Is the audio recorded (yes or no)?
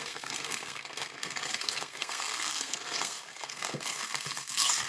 no